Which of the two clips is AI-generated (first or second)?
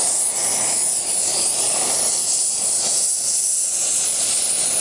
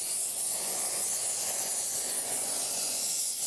second